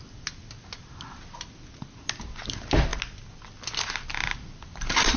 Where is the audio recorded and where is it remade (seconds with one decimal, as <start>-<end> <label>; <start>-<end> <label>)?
0.0-5.2 recorded